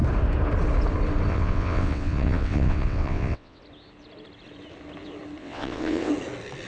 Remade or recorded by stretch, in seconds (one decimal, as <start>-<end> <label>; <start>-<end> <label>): 0.0-1.3 recorded; 1.3-3.6 remade; 3.6-5.4 recorded; 5.4-6.1 remade; 6.1-6.7 recorded